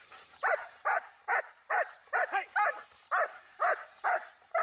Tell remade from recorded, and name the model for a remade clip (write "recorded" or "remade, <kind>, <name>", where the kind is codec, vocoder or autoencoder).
remade, vocoder, BigVGAN v2